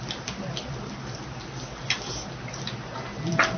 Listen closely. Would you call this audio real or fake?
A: real